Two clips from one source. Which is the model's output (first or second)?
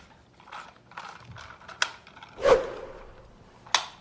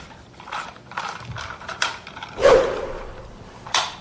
second